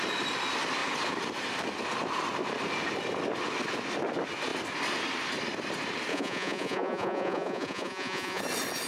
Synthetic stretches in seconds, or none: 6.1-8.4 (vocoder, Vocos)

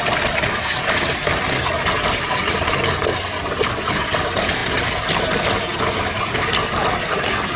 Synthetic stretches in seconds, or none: none

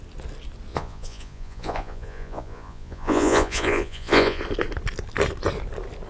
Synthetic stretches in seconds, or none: 0.7-4.4 (vocoder, Vocos)

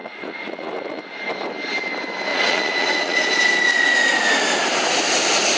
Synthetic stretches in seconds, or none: 0.0-1.0 (vocoder, Vocos); 2.3-3.3